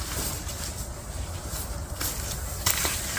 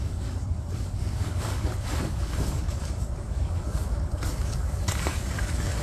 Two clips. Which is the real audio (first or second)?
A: first